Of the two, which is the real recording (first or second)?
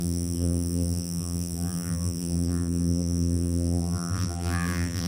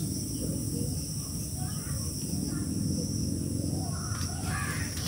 second